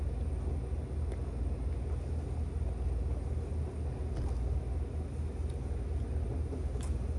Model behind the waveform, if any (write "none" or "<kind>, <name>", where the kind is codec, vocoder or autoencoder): none